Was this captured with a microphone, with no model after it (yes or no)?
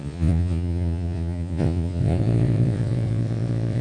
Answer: no